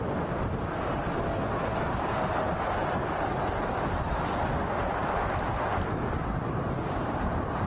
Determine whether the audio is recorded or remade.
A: remade